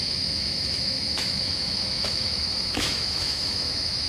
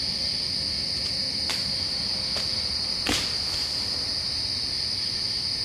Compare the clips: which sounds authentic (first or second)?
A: second